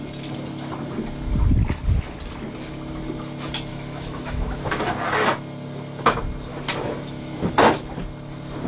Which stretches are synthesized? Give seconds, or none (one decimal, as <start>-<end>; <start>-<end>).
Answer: 3.7-4.7; 6.5-7.5